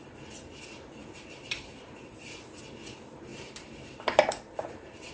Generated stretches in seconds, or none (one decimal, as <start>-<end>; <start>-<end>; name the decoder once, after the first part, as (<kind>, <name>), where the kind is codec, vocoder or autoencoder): 1.0-2.3 (vocoder, BigVGAN v2); 3.3-5.1